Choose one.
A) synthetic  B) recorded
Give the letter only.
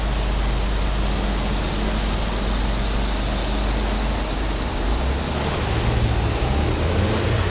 B